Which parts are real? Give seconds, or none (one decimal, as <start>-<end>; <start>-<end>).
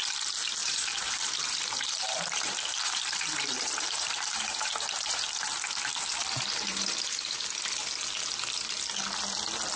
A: 0.0-0.6; 5.3-5.9; 7.4-9.8